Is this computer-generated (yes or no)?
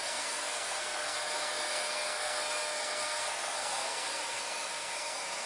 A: yes